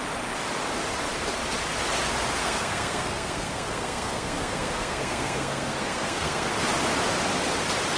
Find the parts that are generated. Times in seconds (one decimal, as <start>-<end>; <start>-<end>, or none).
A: 2.4-6.5